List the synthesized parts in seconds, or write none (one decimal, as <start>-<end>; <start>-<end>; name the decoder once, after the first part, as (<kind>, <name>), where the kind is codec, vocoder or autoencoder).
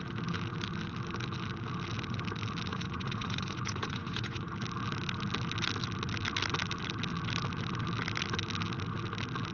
2.7-4.5 (vocoder, Vocos)